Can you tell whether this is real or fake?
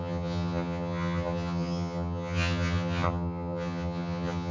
fake